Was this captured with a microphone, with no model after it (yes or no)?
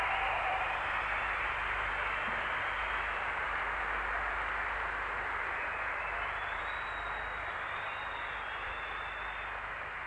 yes